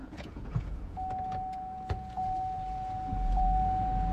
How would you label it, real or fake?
fake